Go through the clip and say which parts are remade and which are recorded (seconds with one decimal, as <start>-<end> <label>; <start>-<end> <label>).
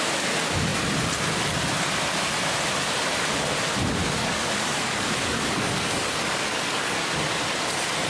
0.0-4.0 recorded; 4.0-7.2 remade; 7.2-8.1 recorded